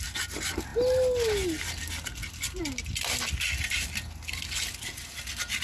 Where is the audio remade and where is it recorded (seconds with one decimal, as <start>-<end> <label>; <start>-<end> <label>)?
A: 0.0-5.6 recorded